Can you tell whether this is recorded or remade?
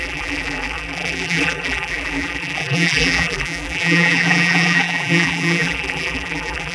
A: remade